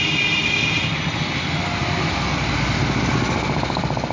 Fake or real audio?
real